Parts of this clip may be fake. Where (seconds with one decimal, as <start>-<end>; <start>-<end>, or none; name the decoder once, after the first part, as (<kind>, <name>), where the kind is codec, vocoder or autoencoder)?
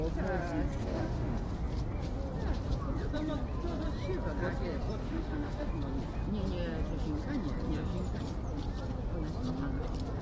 0.8-1.5 (autoencoder, DAC-VAE); 5.0-5.7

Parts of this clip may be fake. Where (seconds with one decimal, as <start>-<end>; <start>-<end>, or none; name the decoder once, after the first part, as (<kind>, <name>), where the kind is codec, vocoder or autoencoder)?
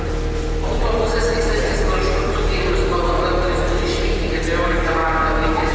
5.0-5.7 (autoencoder, DAC-VAE)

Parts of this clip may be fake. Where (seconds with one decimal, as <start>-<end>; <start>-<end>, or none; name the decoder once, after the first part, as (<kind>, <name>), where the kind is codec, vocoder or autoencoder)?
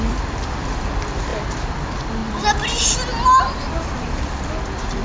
none